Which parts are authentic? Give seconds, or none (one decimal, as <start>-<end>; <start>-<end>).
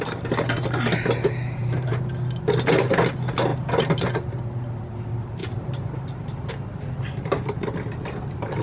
0.0-1.6; 2.1-5.4; 6.5-8.6